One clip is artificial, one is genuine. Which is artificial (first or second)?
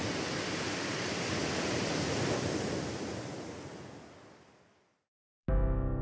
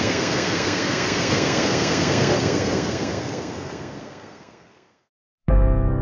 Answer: second